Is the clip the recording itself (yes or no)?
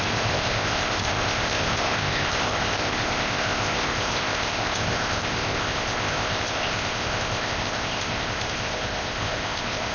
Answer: no